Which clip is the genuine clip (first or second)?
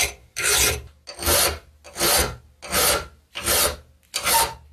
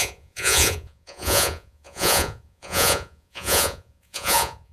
first